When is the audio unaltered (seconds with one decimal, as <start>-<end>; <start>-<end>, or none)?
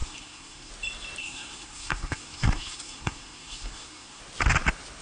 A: 0.7-1.2; 4.2-5.0